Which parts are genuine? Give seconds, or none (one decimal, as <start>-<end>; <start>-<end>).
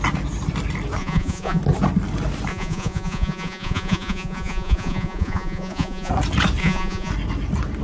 0.0-1.0; 1.6-2.5; 6.1-6.6; 7.1-7.8